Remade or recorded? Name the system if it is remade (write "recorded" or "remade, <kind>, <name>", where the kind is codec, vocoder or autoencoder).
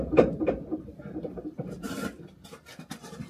remade, vocoder, BigVGAN v2